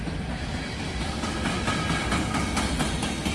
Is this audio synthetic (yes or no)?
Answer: no